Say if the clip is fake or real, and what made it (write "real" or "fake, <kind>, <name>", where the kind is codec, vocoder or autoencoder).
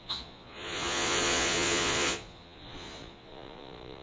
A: fake, vocoder, Vocos